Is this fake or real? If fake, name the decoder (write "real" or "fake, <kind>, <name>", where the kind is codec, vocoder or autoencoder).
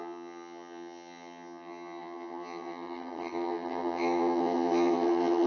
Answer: fake, vocoder, HiFi-GAN